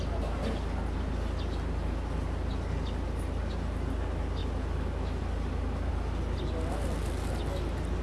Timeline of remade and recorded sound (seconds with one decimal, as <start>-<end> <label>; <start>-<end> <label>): 0.0-8.0 recorded